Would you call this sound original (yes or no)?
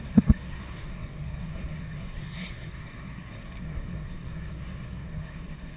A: no